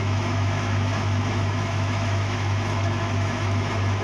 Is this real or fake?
fake